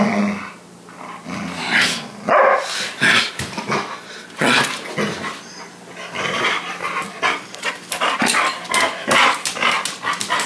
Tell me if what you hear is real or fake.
real